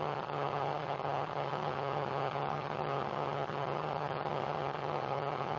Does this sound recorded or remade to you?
remade